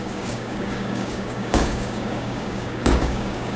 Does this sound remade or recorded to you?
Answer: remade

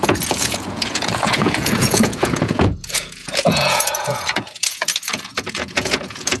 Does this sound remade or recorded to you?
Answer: remade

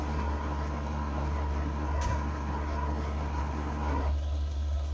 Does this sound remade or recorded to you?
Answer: remade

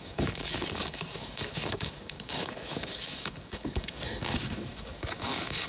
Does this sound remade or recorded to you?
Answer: remade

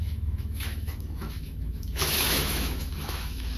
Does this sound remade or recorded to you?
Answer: remade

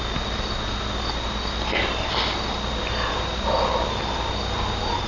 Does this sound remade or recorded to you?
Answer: recorded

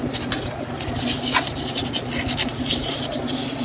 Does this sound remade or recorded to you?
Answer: recorded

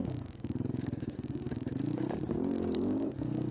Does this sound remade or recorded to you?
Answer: remade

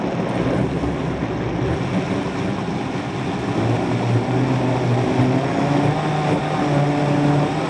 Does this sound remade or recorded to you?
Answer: recorded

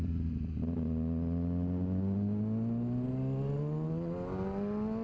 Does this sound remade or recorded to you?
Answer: recorded